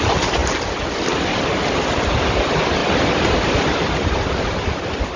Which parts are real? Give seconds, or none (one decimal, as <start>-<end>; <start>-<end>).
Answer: 0.0-5.2